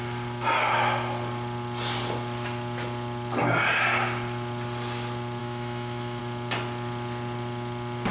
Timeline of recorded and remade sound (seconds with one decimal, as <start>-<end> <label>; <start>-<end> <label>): 0.0-5.4 recorded; 5.4-6.2 remade; 6.2-8.1 recorded